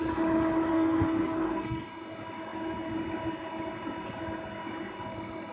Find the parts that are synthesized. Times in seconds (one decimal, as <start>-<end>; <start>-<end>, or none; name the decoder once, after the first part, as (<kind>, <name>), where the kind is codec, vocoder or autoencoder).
0.7-1.8 (codec, SNAC)